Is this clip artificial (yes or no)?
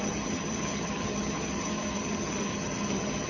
yes